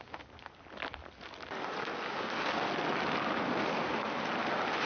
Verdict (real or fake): real